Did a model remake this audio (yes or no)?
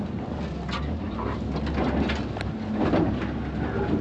no